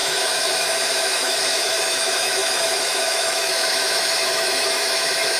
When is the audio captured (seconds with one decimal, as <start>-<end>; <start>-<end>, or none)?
none